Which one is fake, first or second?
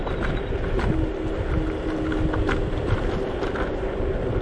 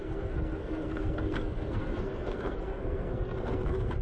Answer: second